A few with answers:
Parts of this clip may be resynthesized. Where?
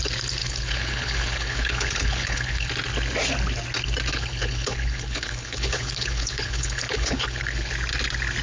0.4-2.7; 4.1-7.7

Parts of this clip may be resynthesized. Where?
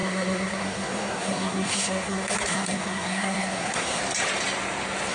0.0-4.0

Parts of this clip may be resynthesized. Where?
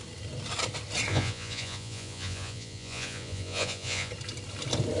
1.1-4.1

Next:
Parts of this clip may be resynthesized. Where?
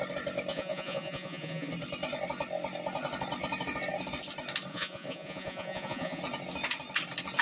0.5-1.7; 4.7-6.2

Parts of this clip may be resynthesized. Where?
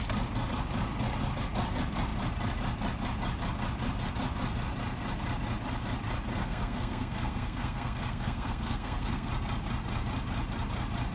6.4-9.3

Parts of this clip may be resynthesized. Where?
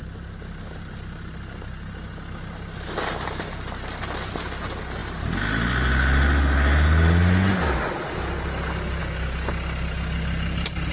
none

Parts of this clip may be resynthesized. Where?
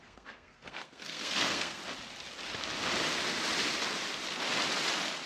0.0-1.8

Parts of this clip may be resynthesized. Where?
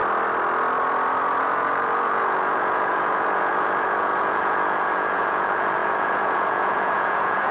1.4-7.5